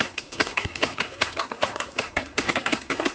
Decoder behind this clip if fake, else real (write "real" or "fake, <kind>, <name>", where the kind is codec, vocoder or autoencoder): fake, codec, SNAC